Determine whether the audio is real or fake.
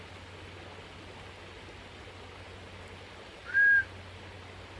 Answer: real